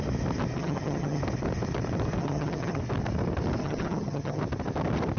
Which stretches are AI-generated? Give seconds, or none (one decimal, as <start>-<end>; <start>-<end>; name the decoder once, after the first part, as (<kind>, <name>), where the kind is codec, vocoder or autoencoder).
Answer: 0.6-1.2 (vocoder, HiFi-GAN); 2.2-2.8; 3.6-4.4